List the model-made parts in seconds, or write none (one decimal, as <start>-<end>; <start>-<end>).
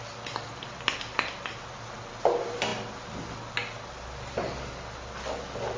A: none